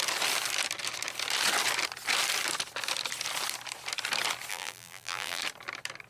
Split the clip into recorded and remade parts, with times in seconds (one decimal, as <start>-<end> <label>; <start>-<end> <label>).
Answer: 0.0-4.5 recorded; 4.5-5.4 remade; 5.4-6.1 recorded